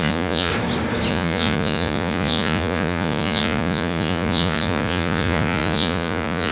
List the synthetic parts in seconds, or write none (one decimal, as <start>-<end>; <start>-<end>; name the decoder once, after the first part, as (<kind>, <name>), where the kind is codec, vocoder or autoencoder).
0.0-0.5 (vocoder, Vocos); 1.1-6.5